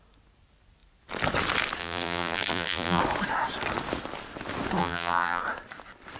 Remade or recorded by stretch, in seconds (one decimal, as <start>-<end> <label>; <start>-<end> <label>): 0.0-1.8 recorded; 1.8-3.0 remade; 3.0-4.8 recorded; 4.8-5.4 remade; 5.4-6.2 recorded